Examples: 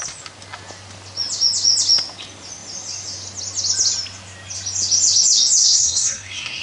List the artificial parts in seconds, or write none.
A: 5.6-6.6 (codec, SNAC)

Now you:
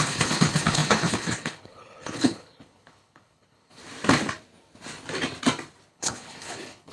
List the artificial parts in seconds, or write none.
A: 0.0-3.8 (codec, HILCodec); 5.9-6.9

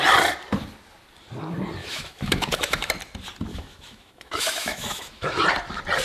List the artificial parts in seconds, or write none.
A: 1.8-2.9 (autoencoder, DAC-VAE); 3.5-5.4

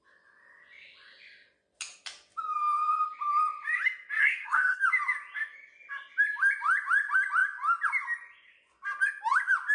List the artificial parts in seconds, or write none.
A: 4.2-4.8 (codec, SNAC)